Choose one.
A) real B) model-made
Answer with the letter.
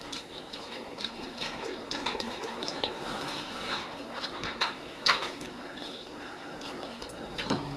B